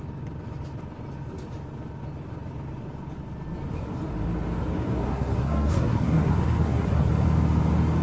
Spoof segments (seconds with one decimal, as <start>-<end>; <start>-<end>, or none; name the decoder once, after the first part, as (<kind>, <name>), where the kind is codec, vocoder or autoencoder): 5.0-7.1 (codec, SNAC)